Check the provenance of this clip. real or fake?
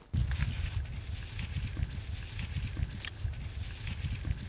real